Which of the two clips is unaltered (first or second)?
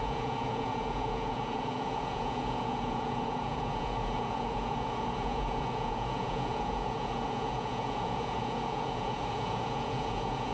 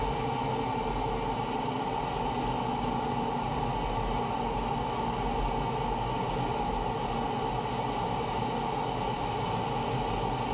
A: second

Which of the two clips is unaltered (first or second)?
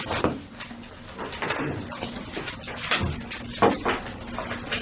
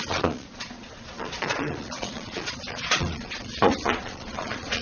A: first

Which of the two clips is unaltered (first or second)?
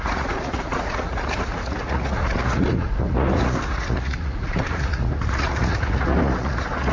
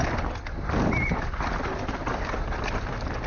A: second